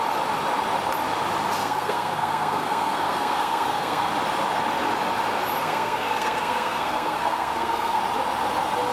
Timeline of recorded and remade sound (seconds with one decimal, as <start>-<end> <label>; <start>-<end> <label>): 0.0-1.6 recorded; 1.6-4.1 remade; 4.1-5.6 recorded; 5.6-8.0 remade; 8.0-8.9 recorded